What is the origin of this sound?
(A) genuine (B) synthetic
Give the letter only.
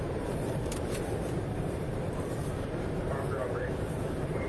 B